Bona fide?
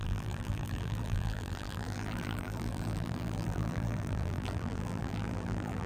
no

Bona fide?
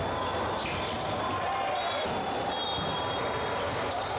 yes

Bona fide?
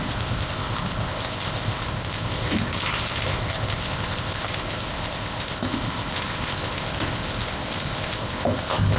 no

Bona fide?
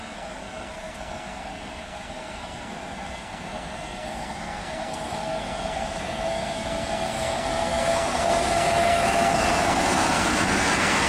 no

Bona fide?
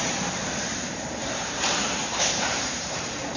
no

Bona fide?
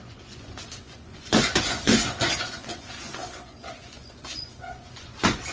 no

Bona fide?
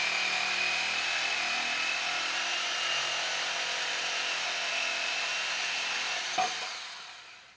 yes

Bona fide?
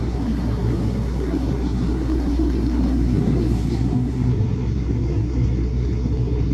no